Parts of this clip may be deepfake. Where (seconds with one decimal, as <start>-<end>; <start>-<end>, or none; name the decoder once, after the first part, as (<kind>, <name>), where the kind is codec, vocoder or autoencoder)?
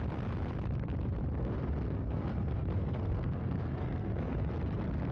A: 1.4-4.5 (codec, SNAC)